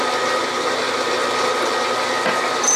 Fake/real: real